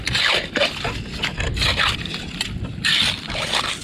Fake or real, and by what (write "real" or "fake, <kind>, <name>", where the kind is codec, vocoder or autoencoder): real